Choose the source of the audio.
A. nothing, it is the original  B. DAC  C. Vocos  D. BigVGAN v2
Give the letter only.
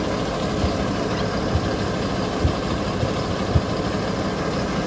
A